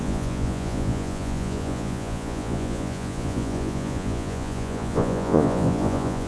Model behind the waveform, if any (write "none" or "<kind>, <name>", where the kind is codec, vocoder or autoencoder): vocoder, Vocos